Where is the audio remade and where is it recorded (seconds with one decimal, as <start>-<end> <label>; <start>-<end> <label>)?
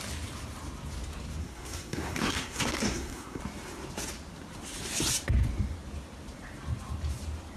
0.0-1.4 recorded; 1.4-3.4 remade; 3.4-7.6 recorded